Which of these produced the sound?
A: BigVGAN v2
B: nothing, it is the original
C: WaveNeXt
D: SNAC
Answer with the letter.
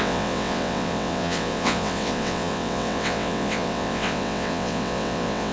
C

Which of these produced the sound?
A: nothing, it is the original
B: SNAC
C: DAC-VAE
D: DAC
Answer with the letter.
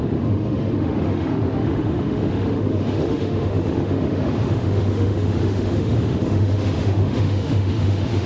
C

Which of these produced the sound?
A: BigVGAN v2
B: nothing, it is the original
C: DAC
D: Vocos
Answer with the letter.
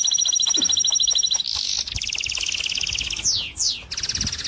B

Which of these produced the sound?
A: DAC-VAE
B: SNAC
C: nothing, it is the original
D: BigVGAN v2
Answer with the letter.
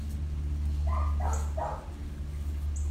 C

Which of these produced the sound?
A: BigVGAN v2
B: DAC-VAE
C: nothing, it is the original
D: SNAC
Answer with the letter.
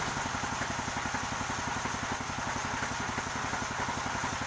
C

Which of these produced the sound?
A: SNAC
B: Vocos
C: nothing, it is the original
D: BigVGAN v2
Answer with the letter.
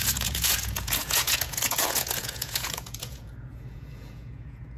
B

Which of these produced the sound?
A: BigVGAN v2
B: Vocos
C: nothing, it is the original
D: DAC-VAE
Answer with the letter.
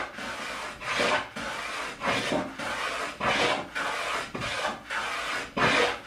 C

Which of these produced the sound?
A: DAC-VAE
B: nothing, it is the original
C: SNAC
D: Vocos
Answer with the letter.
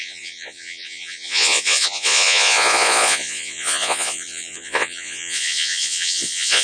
D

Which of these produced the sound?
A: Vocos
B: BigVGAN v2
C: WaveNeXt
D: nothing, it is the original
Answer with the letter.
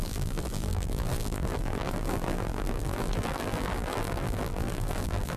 B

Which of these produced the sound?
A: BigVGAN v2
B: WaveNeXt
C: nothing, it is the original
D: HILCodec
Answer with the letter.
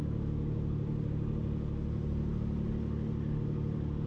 C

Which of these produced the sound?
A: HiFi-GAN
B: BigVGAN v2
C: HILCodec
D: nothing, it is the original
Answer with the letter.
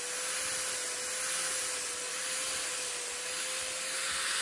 D